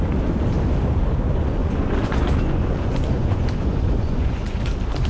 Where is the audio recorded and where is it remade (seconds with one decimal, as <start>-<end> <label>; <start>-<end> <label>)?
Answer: 0.0-1.6 recorded; 1.6-4.6 remade; 4.6-5.1 recorded